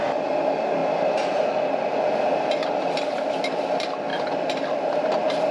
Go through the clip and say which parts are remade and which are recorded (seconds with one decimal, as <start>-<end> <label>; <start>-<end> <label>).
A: 0.0-5.5 recorded